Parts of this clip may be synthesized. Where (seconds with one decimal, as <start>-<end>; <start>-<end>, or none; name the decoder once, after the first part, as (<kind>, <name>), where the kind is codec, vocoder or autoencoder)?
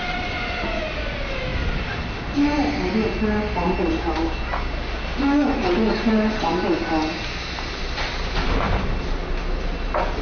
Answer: none